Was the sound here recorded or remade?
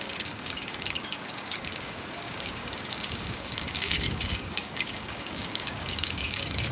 remade